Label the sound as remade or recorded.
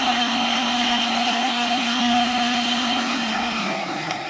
remade